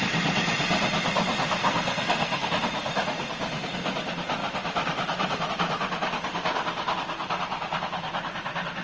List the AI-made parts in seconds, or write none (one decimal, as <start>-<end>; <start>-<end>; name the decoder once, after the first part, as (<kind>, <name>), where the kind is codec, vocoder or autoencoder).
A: 1.6-2.5 (codec, SNAC)